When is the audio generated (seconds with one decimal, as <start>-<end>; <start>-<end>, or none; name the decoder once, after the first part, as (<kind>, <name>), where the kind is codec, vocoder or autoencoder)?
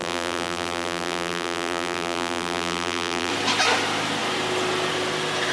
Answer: 0.0-3.3 (vocoder, BigVGAN v2)